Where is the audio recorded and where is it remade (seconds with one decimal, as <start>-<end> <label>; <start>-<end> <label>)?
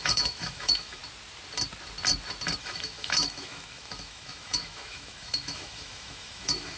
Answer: 0.0-1.0 remade; 1.0-2.6 recorded; 2.6-6.8 remade